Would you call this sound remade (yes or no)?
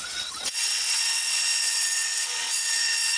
yes